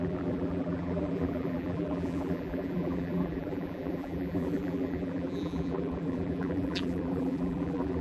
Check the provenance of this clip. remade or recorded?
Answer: remade